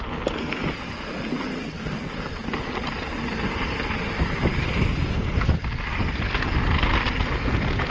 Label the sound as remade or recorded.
recorded